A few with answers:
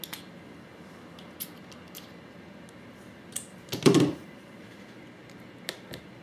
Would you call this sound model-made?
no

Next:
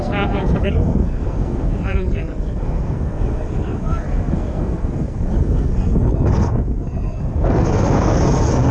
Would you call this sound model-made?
yes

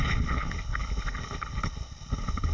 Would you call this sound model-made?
yes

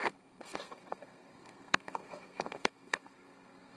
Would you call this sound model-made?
yes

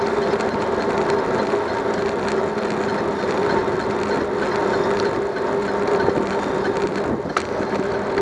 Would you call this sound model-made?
no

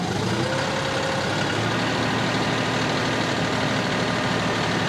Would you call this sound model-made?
no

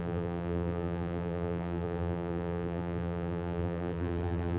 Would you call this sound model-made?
yes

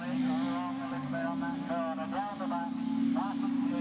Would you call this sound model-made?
no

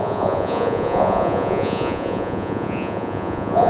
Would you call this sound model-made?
yes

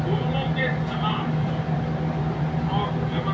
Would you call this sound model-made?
yes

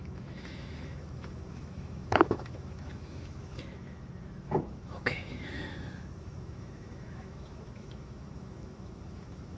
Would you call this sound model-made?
yes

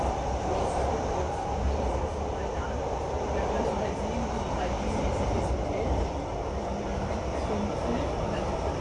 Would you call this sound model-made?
no